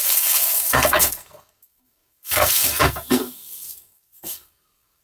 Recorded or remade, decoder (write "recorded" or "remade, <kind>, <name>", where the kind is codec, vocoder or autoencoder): remade, codec, SNAC